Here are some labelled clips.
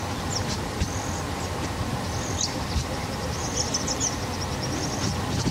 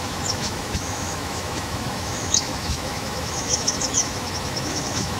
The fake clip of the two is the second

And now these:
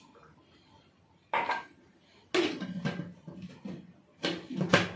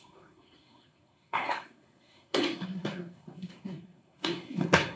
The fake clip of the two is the second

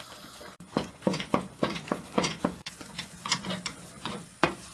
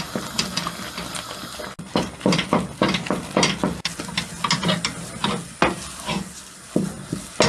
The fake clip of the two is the first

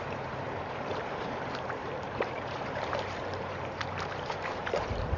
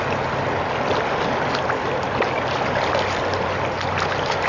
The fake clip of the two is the first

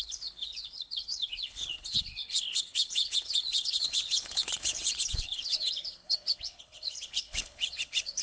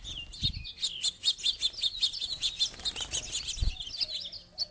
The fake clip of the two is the first